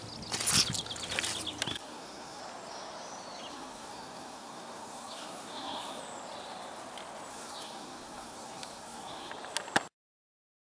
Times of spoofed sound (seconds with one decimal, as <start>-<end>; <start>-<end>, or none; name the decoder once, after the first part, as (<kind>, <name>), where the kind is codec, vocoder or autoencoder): 1.7-2.4 (codec, SNAC); 3.5-6.0; 7.3-9.3